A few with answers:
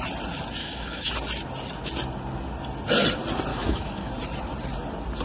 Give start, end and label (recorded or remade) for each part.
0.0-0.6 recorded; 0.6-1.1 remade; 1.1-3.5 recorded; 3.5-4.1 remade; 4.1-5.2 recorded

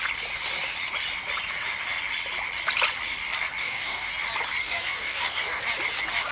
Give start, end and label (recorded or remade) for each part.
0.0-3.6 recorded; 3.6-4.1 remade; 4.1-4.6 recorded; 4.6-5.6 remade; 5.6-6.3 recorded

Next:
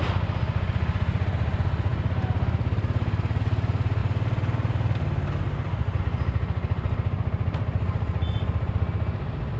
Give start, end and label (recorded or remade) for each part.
0.0-9.6 recorded

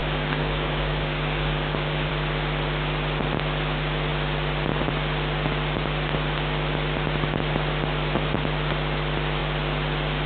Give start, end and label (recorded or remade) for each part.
0.0-2.1 remade; 2.1-10.3 recorded

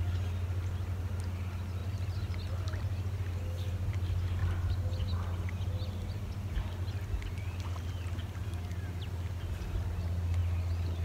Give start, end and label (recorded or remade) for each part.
0.0-11.0 recorded